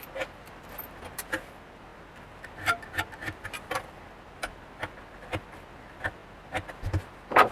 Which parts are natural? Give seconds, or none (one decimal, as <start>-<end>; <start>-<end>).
0.0-7.5